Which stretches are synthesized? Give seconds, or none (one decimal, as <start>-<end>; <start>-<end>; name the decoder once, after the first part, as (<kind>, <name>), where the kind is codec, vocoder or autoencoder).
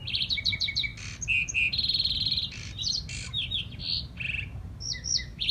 none